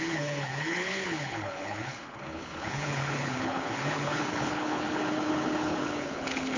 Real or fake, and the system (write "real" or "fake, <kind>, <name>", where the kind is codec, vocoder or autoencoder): fake, codec, HILCodec